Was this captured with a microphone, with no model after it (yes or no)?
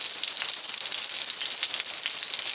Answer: yes